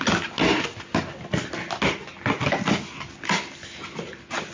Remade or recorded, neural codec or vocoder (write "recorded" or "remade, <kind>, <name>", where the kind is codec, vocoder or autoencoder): recorded